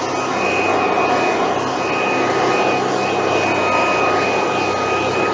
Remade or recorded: recorded